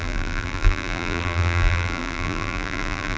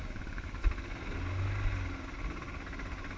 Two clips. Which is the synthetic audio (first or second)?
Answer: first